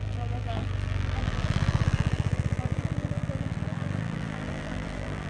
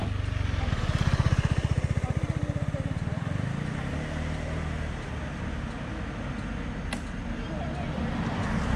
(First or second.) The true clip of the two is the second